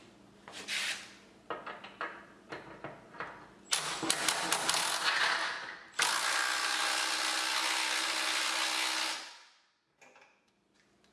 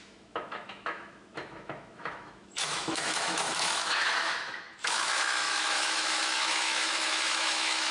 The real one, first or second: first